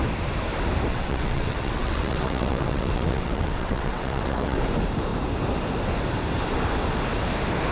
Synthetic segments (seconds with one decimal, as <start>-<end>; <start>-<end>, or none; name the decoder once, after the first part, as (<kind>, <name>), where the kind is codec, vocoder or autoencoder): 0.9-4.6 (vocoder, WaveNeXt)